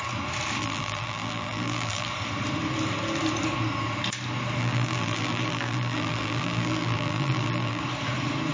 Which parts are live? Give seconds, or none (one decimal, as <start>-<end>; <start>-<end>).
0.0-0.6; 2.1-4.6; 7.8-8.5